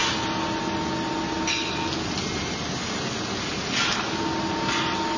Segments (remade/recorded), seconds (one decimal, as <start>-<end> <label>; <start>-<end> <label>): 0.0-5.2 recorded